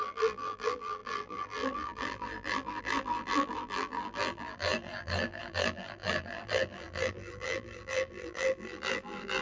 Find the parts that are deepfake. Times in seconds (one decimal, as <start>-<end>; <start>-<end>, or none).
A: 0.0-9.4